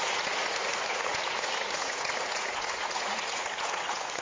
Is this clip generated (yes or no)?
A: yes